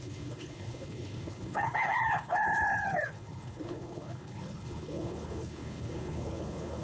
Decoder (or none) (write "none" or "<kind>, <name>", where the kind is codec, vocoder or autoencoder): codec, HILCodec